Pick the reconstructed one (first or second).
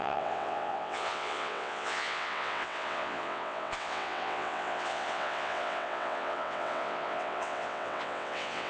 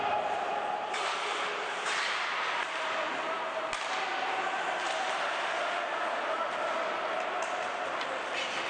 first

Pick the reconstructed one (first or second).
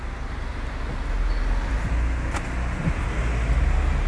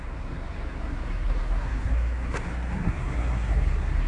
second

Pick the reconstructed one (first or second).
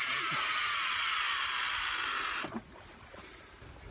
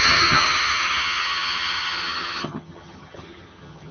second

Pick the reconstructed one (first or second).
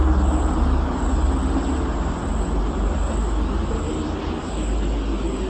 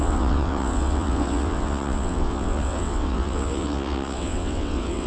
second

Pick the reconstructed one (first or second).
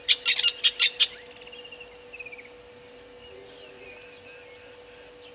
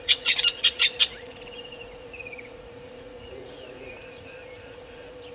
second